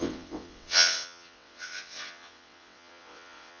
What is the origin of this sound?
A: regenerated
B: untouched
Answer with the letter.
A